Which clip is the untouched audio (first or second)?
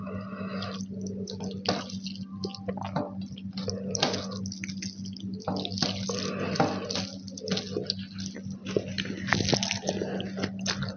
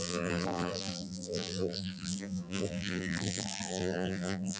first